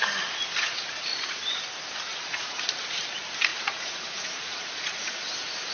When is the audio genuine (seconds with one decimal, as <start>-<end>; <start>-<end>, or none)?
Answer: 0.0-1.1; 1.6-2.1; 2.7-3.5; 5.1-5.7